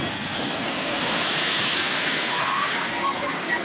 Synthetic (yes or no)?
yes